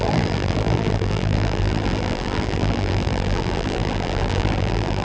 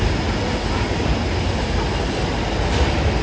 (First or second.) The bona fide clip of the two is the second